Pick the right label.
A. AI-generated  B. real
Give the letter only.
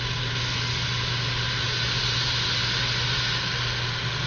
B